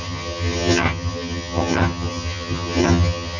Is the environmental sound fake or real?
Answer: fake